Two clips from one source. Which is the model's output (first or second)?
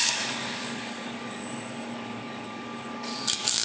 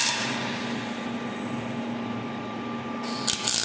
first